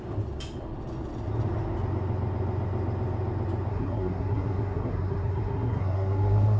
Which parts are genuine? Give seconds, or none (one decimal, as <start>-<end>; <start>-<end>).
0.0-3.7